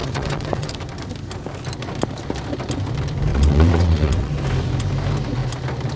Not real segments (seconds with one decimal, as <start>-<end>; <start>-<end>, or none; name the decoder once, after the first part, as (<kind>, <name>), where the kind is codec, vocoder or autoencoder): 0.0-0.7 (vocoder, WaveNeXt); 3.3-4.3